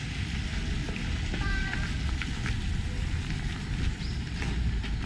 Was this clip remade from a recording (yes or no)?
no